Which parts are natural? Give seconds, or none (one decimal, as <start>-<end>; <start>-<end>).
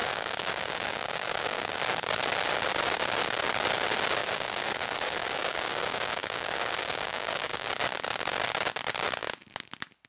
1.8-4.2; 7.7-10.1